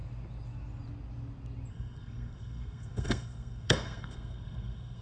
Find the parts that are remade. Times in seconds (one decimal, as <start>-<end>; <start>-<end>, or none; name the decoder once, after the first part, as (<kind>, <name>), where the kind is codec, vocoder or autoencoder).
1.7-5.0 (codec, SNAC)